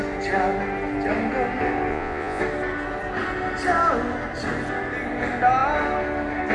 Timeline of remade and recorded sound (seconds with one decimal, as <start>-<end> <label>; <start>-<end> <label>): 0.0-1.9 recorded; 1.9-2.4 remade; 2.4-6.5 recorded